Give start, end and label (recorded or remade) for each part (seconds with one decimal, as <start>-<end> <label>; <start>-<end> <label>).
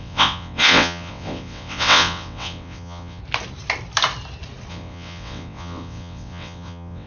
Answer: 0.0-3.2 remade; 3.2-4.7 recorded; 4.7-7.1 remade